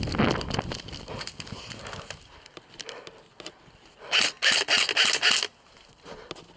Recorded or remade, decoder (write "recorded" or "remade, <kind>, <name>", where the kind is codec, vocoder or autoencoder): recorded